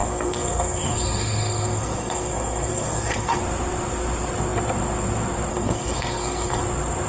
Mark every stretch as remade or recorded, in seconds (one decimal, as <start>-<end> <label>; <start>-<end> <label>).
0.0-3.4 remade; 3.4-5.5 recorded; 5.5-6.6 remade; 6.6-7.1 recorded